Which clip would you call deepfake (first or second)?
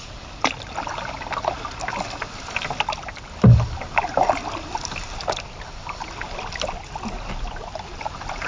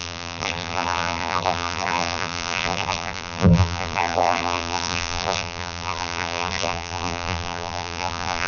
second